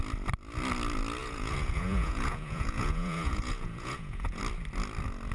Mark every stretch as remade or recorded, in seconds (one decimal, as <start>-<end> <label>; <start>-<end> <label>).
0.0-1.2 recorded; 1.2-4.4 remade; 4.4-5.3 recorded